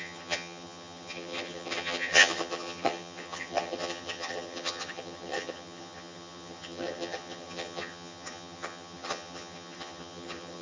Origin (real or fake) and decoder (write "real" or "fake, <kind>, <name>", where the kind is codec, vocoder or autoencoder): fake, vocoder, HiFi-GAN